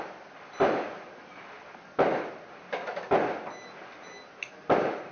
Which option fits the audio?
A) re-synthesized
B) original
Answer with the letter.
B